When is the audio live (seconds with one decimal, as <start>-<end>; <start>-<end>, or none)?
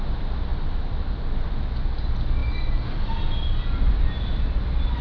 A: 0.0-5.0